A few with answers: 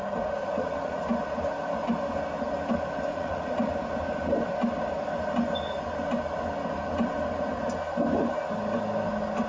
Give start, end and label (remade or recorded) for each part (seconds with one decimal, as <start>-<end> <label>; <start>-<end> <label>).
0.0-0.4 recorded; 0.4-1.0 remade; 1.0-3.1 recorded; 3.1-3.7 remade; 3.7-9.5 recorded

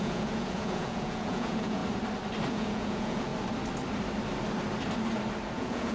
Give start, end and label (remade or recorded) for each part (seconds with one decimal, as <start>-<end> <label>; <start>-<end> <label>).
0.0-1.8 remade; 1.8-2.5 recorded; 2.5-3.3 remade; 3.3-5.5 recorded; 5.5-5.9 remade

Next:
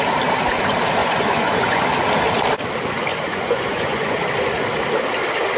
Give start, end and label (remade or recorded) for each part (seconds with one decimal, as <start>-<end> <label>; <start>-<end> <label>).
0.0-1.0 recorded; 1.0-1.8 remade; 1.8-3.1 recorded; 3.1-4.2 remade; 4.2-5.6 recorded

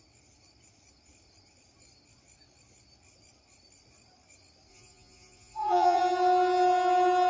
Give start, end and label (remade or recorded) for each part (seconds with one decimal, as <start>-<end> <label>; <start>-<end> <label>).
0.0-4.7 recorded; 4.7-6.0 remade; 6.0-7.3 recorded

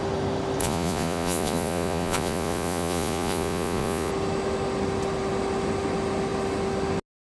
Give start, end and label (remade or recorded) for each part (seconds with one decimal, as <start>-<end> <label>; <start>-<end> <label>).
0.0-0.6 recorded; 0.6-4.1 remade; 4.1-7.3 recorded

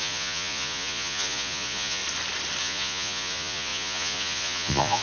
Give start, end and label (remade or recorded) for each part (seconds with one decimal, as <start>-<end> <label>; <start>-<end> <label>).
0.0-2.0 remade; 2.0-2.6 recorded; 2.6-5.0 remade